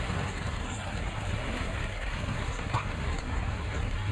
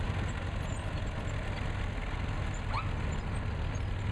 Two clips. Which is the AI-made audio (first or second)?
first